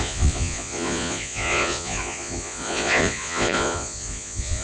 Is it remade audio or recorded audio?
remade